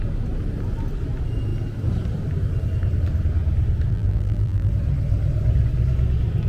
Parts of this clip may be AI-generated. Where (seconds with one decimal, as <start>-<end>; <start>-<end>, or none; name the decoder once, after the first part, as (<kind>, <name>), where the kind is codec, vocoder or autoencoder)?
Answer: 3.9-4.7 (vocoder, BigVGAN v2)